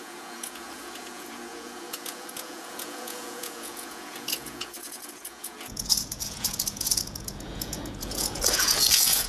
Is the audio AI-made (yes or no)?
yes